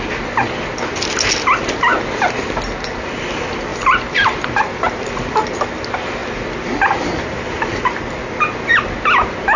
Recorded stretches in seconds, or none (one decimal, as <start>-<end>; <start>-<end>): 0.0-3.7; 5.2-6.2; 7.7-9.6